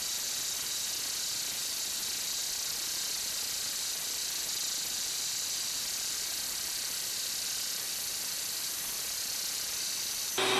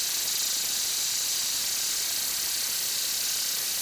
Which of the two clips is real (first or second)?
first